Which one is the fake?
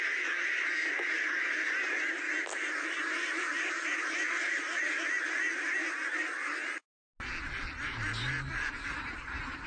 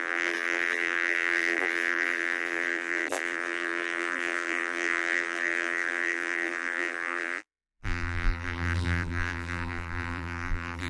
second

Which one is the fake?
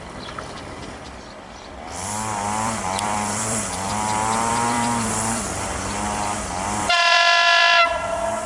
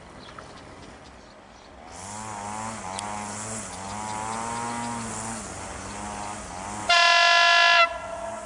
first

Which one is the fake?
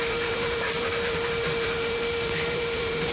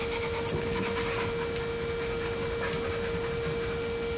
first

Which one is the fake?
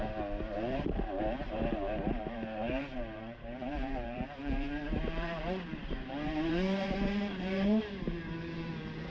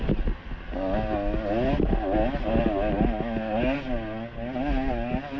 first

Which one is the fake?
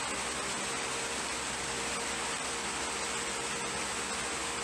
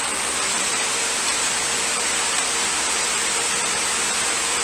second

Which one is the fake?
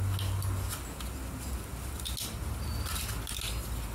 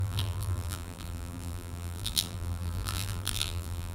second